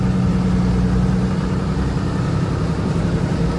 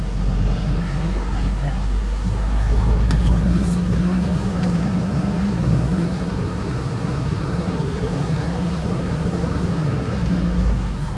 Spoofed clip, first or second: second